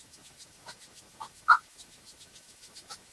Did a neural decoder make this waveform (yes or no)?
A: yes